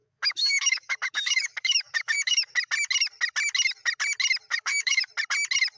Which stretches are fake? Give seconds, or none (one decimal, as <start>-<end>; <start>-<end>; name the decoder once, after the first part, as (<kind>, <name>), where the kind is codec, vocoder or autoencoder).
0.0-2.5 (autoencoder, DAC-VAE); 4.5-5.1